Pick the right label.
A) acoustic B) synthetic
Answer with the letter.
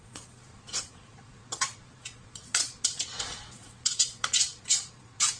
B